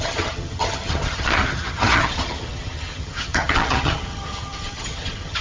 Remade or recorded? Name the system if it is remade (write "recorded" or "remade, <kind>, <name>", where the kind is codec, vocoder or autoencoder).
remade, vocoder, HiFi-GAN